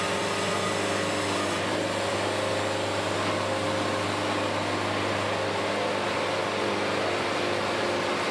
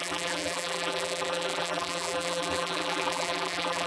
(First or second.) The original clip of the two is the first